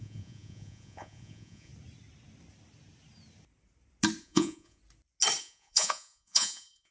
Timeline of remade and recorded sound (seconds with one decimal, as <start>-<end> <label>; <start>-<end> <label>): 0.0-1.7 remade; 1.7-4.2 recorded; 4.2-4.8 remade; 4.8-5.4 recorded; 5.4-6.9 remade